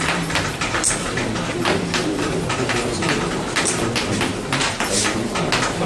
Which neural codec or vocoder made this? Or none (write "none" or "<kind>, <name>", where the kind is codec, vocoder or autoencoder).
vocoder, BigVGAN v2